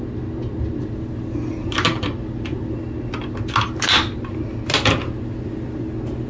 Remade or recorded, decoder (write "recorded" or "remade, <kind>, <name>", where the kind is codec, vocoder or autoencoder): recorded